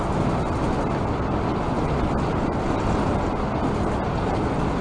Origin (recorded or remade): recorded